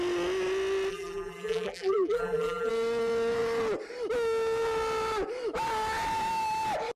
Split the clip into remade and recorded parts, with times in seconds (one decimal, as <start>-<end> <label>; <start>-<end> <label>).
0.0-0.9 recorded; 0.9-2.7 remade; 2.7-7.0 recorded